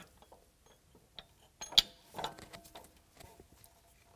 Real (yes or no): yes